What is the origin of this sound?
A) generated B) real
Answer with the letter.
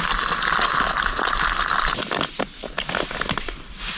B